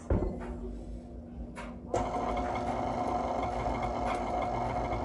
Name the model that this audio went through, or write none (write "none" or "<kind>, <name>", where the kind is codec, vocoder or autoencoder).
none